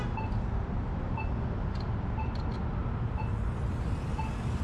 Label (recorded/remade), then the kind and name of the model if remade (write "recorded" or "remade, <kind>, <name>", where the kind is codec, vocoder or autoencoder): recorded